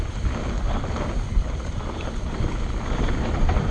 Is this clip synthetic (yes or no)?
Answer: no